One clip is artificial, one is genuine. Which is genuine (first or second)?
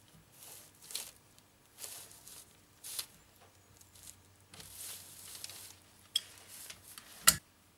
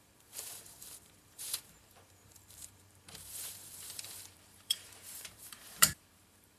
first